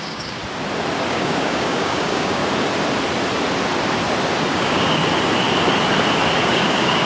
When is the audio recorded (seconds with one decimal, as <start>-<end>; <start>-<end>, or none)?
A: 0.4-1.1; 2.4-4.5; 5.0-6.4

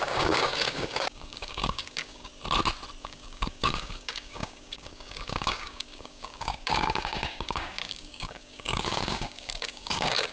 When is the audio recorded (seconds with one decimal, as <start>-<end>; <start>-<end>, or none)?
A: 2.3-3.0

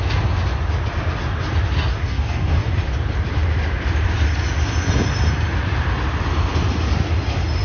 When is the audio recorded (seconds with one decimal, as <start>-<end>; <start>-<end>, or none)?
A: 0.0-1.9; 2.7-7.6

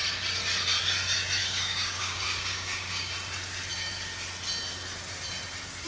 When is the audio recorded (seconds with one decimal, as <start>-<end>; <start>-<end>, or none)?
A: 0.0-1.4; 3.1-5.9

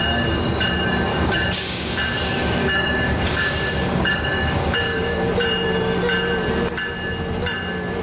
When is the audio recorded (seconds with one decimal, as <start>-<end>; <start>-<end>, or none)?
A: 0.0-1.1; 1.9-2.6; 5.3-8.0